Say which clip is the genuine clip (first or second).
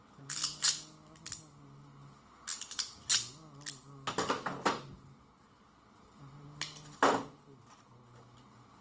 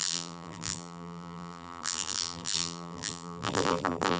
first